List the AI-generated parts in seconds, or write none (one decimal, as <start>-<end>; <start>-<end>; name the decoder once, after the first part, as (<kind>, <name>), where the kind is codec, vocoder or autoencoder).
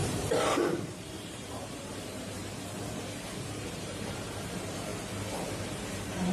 0.0-2.4 (vocoder, BigVGAN v2); 3.4-4.9; 5.6-6.3